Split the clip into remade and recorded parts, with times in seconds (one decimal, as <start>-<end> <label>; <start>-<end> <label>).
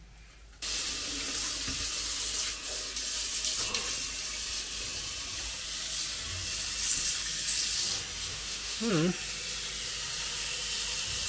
0.0-8.3 recorded; 8.3-8.9 remade; 8.9-11.3 recorded